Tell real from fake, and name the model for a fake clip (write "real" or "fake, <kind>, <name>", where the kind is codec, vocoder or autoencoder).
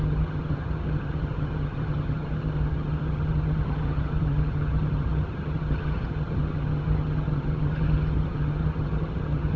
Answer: fake, vocoder, HiFi-GAN